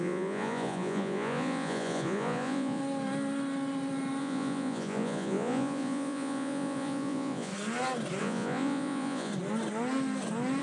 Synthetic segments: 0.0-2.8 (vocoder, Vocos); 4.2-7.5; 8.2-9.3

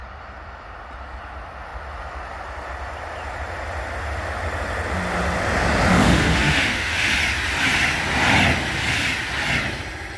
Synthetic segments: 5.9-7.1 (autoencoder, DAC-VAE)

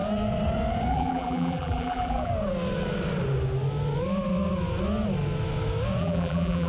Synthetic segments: 0.9-2.3 (vocoder, BigVGAN v2); 6.0-6.7

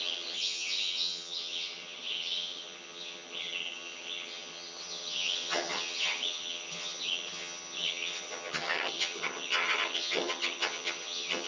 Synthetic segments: 0.0-11.5 (vocoder, HiFi-GAN)

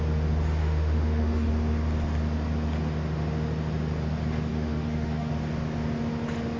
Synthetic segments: 0.6-1.5 (autoencoder, DAC-VAE); 4.5-5.3

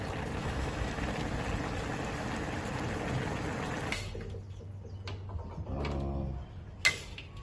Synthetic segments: 0.4-1.0 (autoencoder, DAC-VAE)